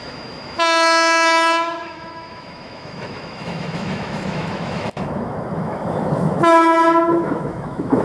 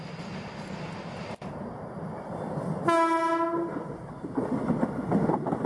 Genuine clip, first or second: second